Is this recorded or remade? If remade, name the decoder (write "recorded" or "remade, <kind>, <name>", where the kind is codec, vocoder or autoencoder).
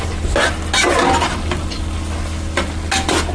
recorded